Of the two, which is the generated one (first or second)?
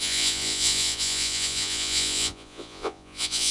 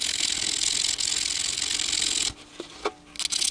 first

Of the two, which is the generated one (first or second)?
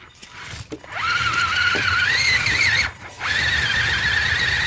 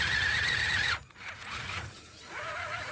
second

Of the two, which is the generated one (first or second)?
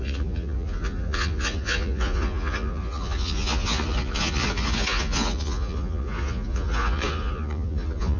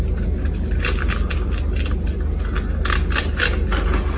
first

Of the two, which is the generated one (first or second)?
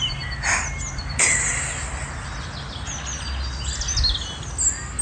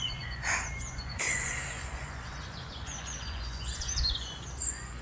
second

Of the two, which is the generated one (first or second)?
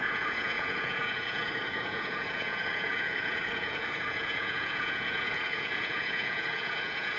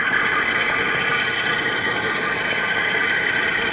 first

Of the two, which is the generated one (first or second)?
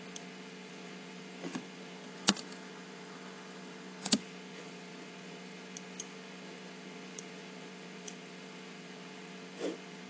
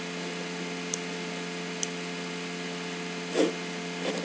first